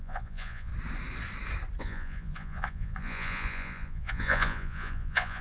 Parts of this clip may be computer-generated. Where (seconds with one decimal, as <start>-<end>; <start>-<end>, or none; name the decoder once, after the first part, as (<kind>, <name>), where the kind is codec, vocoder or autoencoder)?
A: 0.0-0.7 (vocoder, Vocos); 1.8-5.4